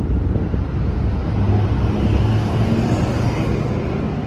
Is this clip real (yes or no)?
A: yes